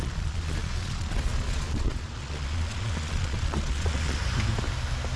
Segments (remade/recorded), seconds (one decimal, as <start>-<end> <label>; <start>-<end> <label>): 0.0-4.2 remade; 4.2-5.2 recorded